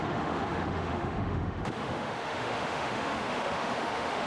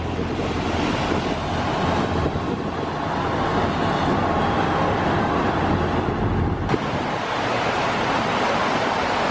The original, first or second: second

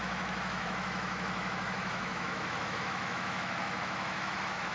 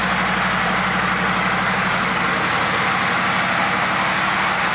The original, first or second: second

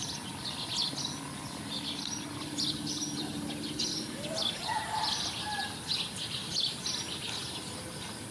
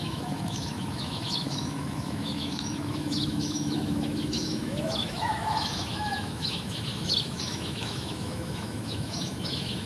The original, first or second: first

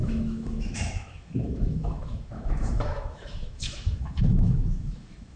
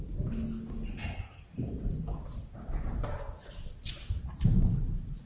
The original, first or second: second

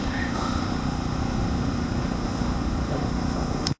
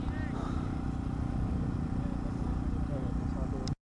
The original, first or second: second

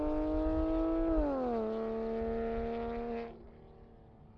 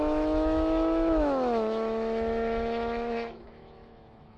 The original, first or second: first